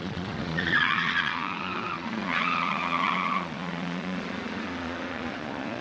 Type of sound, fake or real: fake